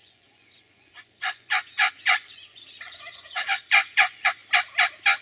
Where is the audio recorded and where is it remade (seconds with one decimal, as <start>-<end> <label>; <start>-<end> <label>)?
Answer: 0.0-4.4 remade; 4.4-5.2 recorded